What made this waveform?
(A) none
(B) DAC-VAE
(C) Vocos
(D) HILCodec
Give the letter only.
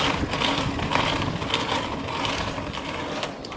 A